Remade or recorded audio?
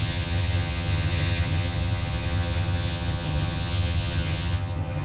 remade